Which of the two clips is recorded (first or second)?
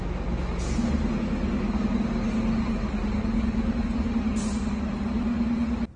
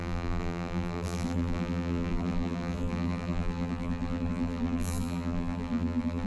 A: first